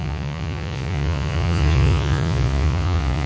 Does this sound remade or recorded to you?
remade